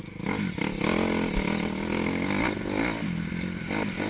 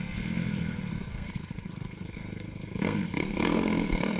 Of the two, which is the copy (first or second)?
second